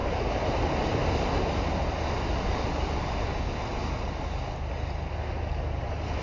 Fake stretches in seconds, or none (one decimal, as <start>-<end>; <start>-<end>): none